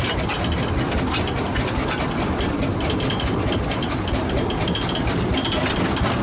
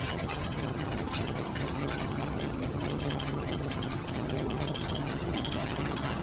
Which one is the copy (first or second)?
second